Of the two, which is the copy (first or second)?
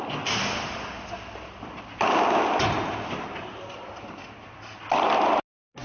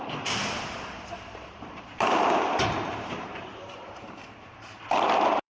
second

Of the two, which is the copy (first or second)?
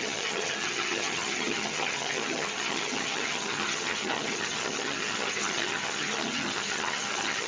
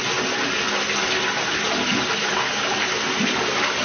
first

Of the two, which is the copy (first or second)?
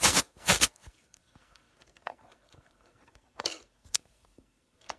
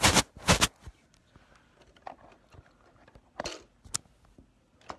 first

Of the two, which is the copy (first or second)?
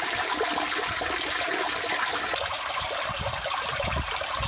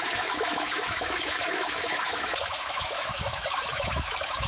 second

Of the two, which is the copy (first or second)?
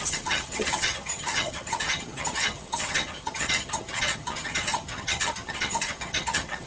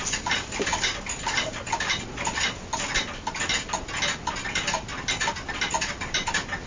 first